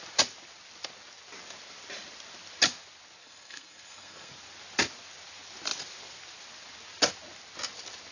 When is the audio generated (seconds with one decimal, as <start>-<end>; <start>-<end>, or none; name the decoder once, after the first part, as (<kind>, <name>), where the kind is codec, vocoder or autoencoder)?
3.2-4.3 (codec, SNAC)